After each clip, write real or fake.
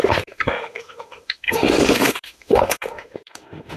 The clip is fake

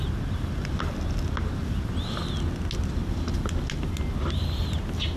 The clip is real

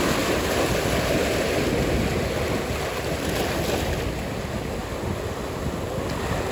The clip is real